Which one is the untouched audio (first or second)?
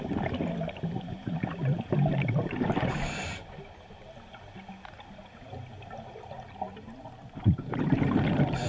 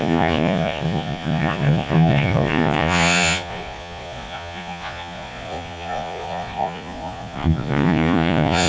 first